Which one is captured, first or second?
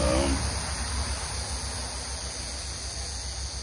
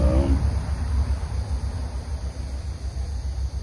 first